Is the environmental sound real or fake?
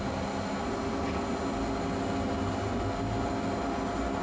real